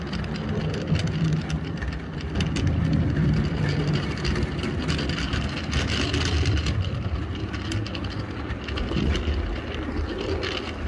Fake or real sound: real